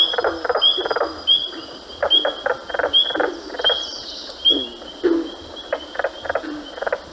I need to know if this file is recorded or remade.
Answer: recorded